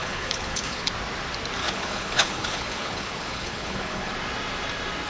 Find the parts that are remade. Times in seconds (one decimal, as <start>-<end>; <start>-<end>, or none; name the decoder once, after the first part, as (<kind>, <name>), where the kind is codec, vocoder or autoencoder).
0.0-0.9 (codec, HILCodec); 1.6-4.1